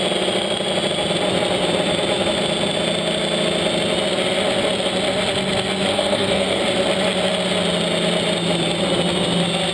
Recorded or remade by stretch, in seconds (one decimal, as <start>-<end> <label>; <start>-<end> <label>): 0.0-5.9 recorded; 5.9-6.6 remade; 6.6-9.7 recorded